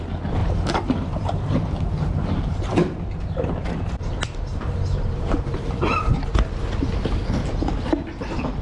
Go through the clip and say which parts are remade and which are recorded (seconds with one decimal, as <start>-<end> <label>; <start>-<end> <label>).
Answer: 0.0-0.4 recorded; 0.4-4.1 remade; 4.1-4.5 recorded; 4.5-6.0 remade; 6.0-8.6 recorded